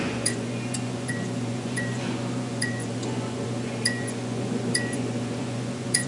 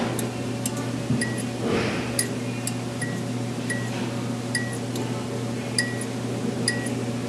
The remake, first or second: first